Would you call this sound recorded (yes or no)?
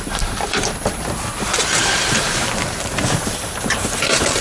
no